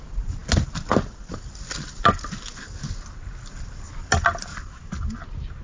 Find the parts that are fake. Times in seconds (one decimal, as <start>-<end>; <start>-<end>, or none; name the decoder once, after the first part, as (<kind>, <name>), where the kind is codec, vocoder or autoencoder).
none